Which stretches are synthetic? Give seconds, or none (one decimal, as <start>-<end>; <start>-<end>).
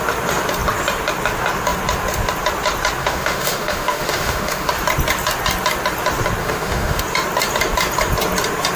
3.0-4.7; 6.4-7.0